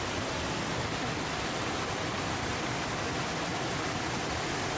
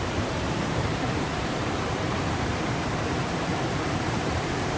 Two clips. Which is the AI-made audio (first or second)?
second